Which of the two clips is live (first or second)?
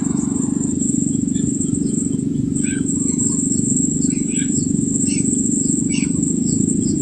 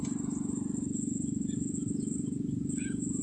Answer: second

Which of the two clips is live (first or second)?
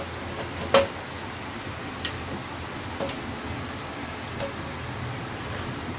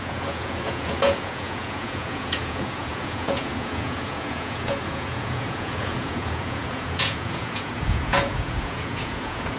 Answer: first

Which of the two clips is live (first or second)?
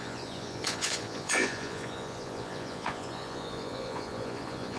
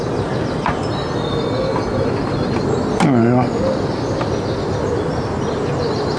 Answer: second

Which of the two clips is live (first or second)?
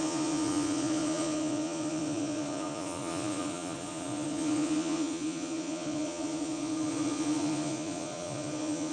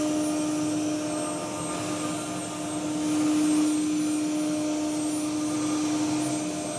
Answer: second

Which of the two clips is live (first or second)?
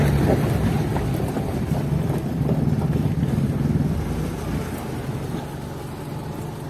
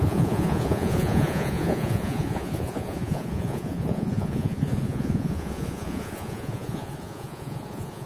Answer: first